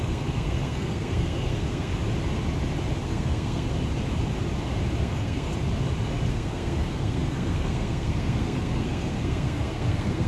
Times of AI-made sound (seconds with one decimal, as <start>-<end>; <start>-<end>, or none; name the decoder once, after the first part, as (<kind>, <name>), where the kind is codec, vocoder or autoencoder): 0.0-1.9 (codec, SNAC); 3.0-3.7; 5.0-5.5; 6.3-10.3